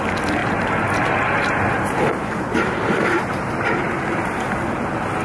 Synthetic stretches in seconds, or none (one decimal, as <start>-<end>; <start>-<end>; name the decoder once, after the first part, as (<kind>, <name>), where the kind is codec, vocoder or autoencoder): 0.4-3.5 (vocoder, BigVGAN v2)